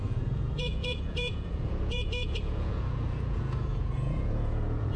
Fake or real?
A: fake